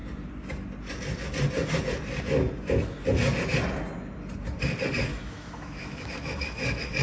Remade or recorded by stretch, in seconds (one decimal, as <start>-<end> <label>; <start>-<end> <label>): 0.0-5.1 recorded; 5.1-7.0 remade